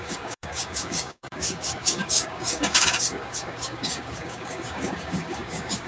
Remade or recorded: remade